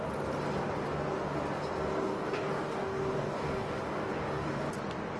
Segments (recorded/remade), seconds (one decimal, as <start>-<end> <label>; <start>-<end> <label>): 0.0-2.0 recorded; 2.0-4.6 remade; 4.6-5.2 recorded